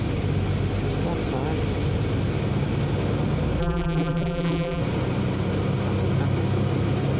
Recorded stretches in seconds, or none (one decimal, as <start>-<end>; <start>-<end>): 0.0-3.6; 4.8-7.2